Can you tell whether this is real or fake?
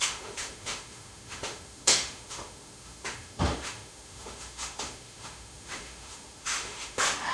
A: fake